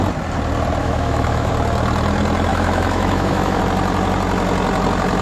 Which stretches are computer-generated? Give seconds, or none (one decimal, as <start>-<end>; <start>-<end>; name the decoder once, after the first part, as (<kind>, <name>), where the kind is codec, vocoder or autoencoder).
0.8-1.5 (autoencoder, DAC-VAE); 2.5-3.6